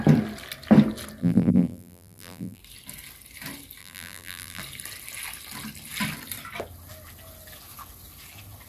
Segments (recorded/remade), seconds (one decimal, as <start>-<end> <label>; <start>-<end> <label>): 0.0-1.2 recorded; 1.2-2.6 remade; 2.6-3.8 recorded; 3.8-4.6 remade; 4.6-8.7 recorded